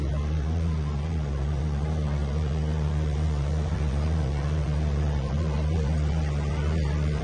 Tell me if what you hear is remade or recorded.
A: remade